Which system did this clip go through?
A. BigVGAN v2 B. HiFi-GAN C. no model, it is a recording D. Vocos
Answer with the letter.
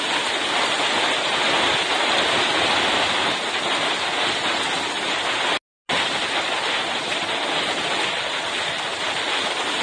C